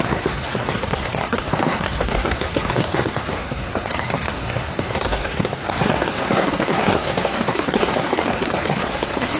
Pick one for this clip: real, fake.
fake